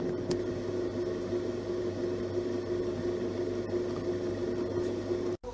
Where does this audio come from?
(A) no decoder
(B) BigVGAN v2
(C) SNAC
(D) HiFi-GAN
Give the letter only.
A